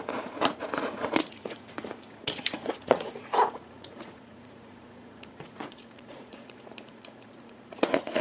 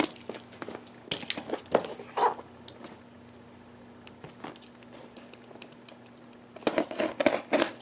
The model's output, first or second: first